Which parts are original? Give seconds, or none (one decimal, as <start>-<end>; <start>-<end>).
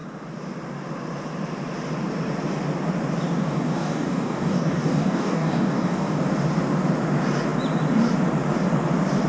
0.0-3.4; 6.2-9.3